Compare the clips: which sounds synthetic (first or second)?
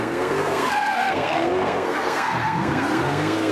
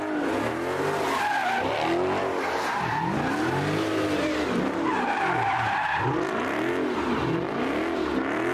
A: first